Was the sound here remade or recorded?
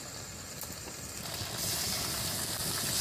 recorded